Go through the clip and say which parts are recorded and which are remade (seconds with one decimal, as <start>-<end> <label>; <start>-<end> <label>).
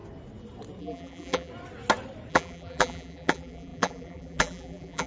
0.0-0.8 recorded; 0.8-1.5 remade; 1.5-2.3 recorded; 2.3-5.1 remade